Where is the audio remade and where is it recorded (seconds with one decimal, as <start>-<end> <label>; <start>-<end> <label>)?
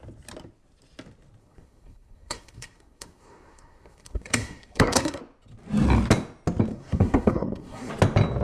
0.0-1.4 recorded; 1.4-5.2 remade; 5.2-6.7 recorded; 6.7-7.9 remade; 7.9-8.4 recorded